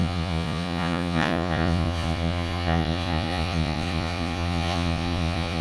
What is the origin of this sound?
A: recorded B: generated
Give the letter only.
B